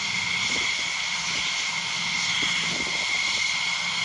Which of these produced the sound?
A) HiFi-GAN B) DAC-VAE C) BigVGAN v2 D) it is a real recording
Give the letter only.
D